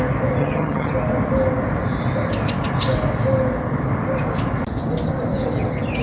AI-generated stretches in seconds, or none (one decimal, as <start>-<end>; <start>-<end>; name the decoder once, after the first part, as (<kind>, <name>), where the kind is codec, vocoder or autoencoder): 0.4-0.9 (vocoder, HiFi-GAN)